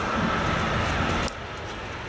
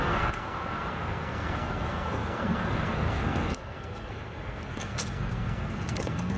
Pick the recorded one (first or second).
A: first